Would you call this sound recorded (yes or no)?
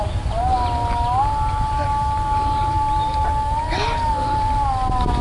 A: yes